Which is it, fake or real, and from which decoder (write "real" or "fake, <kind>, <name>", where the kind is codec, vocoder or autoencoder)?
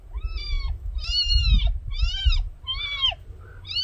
real